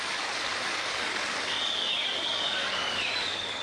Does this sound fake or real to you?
fake